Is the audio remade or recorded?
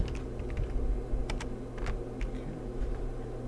recorded